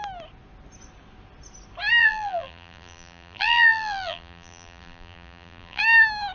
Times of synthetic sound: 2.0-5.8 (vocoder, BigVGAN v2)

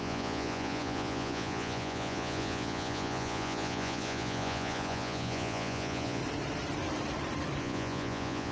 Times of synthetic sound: 0.0-6.2 (vocoder, Vocos); 7.6-8.5

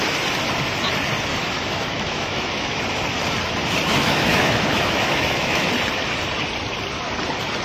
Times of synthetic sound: 1.3-2.8 (autoencoder, DAC-VAE); 3.9-5.7

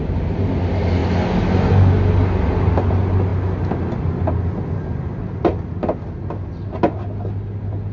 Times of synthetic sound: none

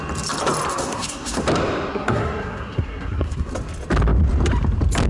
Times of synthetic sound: 0.7-1.4 (codec, SNAC); 1.9-3.5

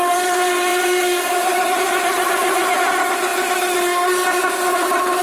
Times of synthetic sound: 0.7-2.8 (vocoder, BigVGAN v2)